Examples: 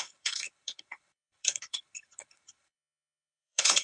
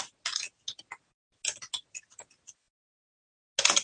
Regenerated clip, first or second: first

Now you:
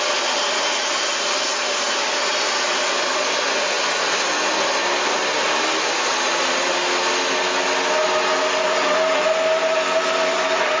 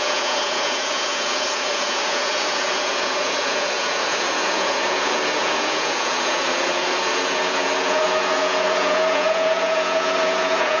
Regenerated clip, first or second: second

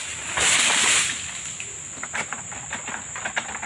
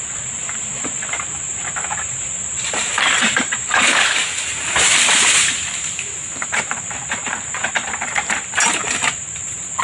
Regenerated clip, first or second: second